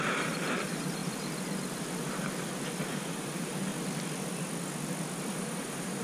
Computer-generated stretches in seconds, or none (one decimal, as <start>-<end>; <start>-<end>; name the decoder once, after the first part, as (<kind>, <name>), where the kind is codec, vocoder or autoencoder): 0.0-1.0 (vocoder, BigVGAN v2); 2.9-3.7; 5.3-6.0